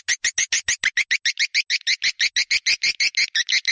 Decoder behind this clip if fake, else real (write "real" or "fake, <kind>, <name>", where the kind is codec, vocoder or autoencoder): real